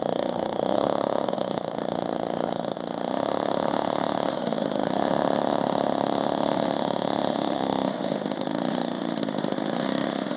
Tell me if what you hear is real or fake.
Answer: fake